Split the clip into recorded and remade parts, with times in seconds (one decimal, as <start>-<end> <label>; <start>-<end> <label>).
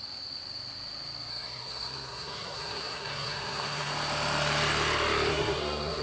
0.0-1.3 recorded; 1.3-3.9 remade; 3.9-5.3 recorded; 5.3-6.0 remade